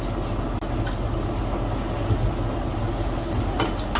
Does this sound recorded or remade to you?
recorded